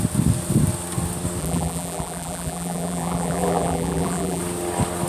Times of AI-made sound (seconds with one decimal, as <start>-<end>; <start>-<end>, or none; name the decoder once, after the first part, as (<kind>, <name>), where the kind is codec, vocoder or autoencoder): 1.4-4.4 (vocoder, BigVGAN v2)